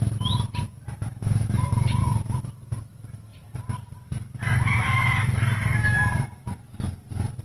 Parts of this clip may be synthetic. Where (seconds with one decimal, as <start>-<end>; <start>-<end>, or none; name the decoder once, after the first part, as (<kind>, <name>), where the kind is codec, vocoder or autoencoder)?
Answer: 1.1-2.0 (vocoder, BigVGAN v2); 3.3-4.4